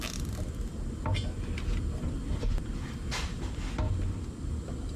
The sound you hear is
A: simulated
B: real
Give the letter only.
B